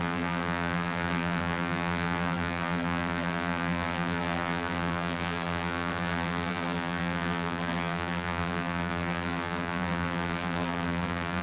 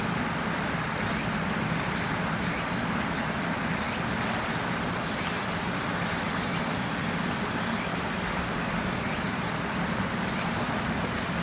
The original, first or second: second